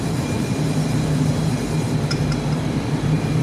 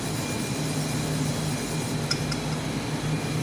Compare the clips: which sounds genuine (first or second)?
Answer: second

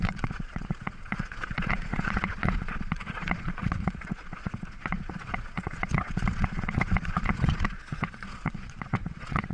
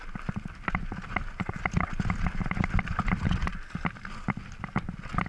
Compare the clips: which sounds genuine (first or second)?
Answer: second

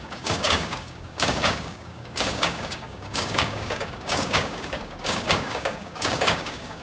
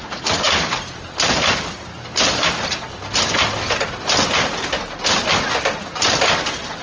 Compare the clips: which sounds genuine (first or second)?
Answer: second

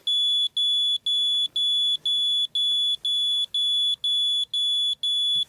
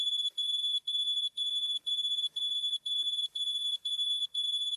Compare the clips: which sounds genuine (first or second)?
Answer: first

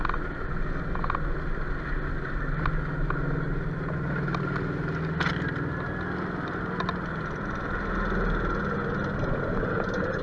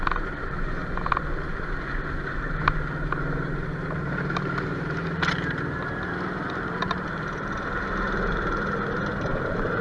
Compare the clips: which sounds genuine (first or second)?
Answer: first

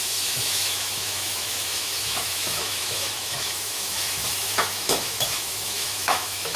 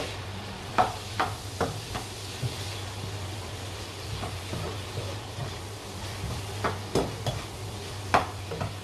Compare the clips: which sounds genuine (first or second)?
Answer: second